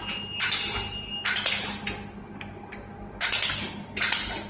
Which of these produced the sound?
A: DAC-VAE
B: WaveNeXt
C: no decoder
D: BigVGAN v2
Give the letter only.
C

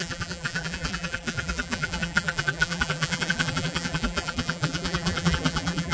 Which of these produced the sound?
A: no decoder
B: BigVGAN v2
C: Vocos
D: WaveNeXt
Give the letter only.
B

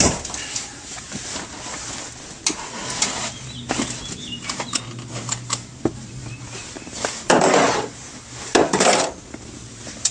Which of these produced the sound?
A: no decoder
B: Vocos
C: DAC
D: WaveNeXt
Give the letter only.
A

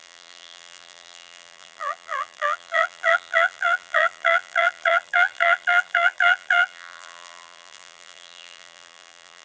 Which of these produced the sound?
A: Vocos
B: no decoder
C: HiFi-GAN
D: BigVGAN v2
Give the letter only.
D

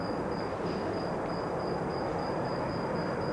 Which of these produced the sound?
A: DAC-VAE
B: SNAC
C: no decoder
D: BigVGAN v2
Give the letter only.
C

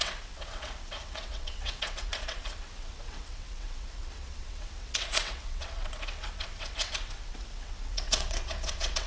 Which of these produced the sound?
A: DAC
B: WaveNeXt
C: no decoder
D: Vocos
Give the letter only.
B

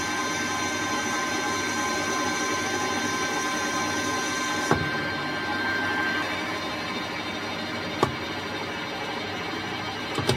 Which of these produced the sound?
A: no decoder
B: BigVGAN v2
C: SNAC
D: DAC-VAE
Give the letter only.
A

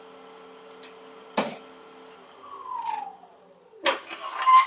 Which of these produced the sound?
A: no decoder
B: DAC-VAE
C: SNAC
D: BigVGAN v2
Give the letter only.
A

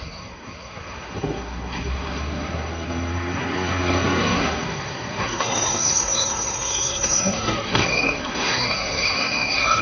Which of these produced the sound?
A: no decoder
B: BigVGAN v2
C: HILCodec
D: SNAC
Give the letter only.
D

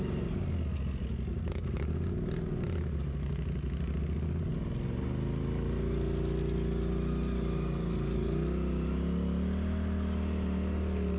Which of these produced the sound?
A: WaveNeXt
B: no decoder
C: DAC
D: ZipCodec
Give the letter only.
B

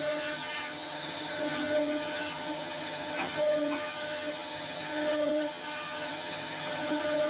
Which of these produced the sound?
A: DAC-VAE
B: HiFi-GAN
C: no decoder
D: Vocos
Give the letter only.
B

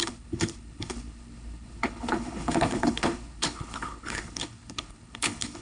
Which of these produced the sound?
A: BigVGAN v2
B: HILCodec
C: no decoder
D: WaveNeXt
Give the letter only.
B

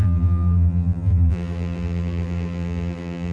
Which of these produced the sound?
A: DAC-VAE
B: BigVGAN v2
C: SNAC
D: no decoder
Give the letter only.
B